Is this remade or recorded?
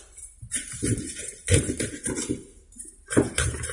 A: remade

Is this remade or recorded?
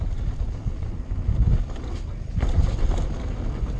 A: recorded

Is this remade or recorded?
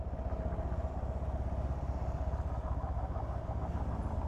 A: recorded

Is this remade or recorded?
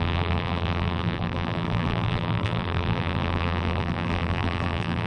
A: remade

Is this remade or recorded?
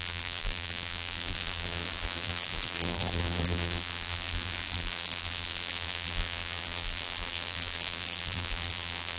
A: remade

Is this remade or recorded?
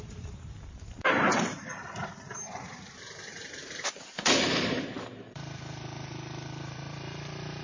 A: remade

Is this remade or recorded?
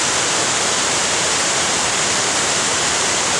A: remade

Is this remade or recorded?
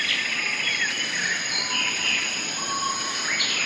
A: recorded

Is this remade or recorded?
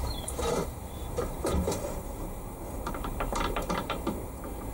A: remade